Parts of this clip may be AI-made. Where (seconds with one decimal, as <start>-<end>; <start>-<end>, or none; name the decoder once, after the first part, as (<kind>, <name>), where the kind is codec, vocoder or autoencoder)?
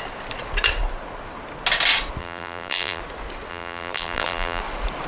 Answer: 2.2-3.0 (vocoder, BigVGAN v2); 3.5-4.6